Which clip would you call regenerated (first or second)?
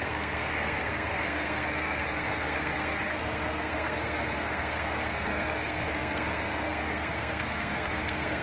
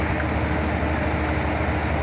first